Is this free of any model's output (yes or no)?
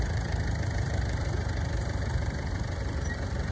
no